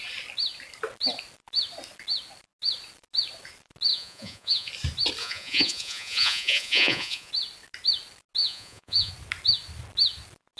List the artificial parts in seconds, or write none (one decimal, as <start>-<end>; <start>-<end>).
3.9-4.7; 5.2-7.3; 8.4-9.1